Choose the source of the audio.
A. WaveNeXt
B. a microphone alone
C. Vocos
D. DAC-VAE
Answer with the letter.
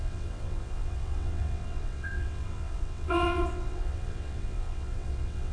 A